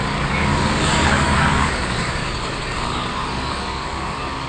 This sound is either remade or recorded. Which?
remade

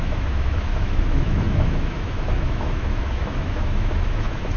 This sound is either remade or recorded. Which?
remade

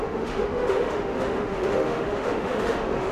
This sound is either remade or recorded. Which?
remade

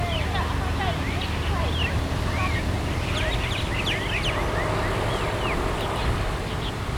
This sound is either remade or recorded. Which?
recorded